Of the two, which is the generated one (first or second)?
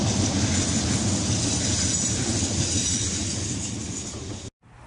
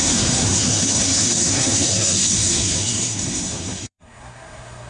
second